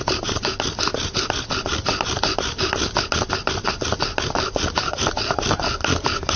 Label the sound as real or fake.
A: real